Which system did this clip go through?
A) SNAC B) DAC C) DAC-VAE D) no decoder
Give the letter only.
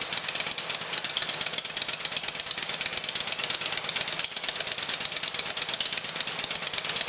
D